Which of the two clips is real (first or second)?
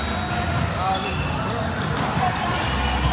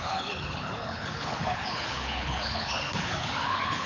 first